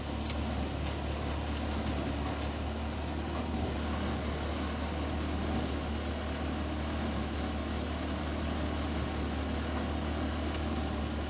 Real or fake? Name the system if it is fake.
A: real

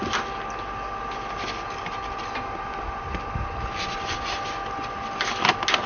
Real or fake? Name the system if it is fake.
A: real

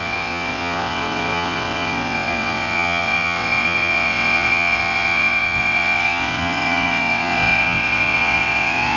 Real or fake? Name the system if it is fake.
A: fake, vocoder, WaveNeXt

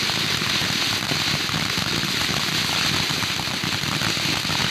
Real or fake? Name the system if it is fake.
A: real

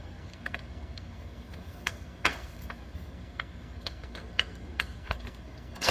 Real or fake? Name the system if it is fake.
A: fake, codec, SNAC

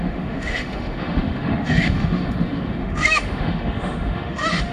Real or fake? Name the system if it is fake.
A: fake, autoencoder, DAC-VAE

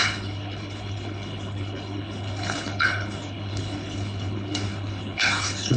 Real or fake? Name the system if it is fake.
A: fake, codec, HILCodec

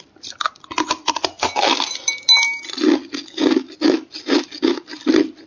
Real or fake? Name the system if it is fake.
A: real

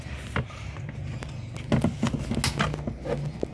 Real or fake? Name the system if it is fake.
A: real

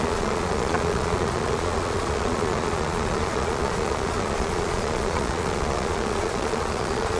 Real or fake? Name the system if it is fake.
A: fake, vocoder, Vocos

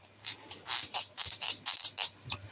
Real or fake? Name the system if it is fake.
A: fake, vocoder, BigVGAN v2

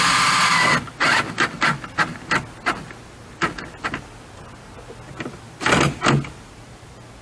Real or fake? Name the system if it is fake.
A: real